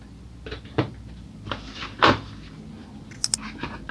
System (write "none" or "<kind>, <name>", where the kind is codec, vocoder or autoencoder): none